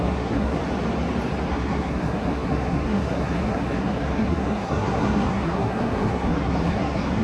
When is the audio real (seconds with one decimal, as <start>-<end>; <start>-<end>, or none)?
0.6-1.5